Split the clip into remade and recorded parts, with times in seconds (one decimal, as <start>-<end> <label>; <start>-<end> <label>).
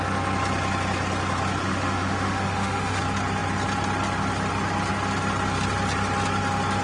0.0-1.6 recorded; 1.6-3.0 remade; 3.0-6.8 recorded